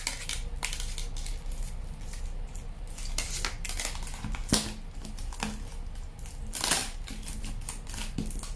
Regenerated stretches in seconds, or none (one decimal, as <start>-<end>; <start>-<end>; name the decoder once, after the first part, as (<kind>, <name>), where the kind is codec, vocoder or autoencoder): none